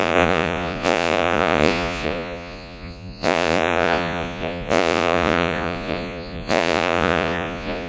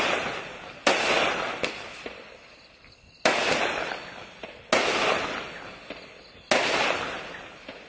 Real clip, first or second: second